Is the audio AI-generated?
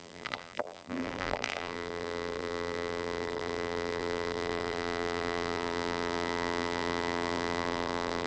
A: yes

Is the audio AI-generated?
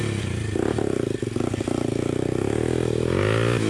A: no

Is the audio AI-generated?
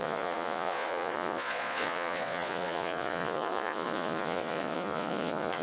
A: yes